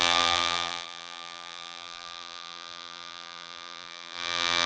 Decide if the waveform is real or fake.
fake